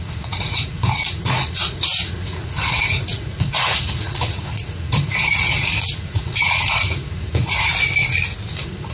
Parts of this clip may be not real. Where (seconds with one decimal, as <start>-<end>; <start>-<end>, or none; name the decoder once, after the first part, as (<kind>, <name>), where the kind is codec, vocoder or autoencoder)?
0.0-7.7 (vocoder, Vocos); 8.5-8.9